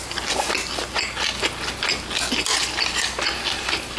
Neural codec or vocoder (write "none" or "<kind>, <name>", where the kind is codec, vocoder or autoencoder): none